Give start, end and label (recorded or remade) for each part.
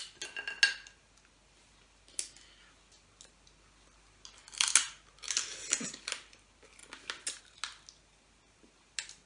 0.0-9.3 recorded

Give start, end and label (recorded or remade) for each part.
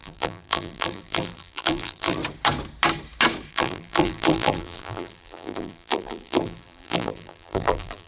0.0-2.2 remade; 2.2-3.5 recorded; 3.5-8.1 remade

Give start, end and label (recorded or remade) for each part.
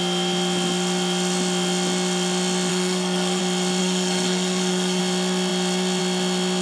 0.0-2.7 recorded; 2.7-3.4 remade; 3.4-3.8 recorded; 3.8-5.0 remade; 5.0-6.6 recorded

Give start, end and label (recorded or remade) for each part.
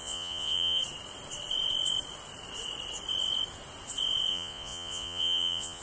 0.0-0.8 remade; 0.8-4.3 recorded; 4.3-5.8 remade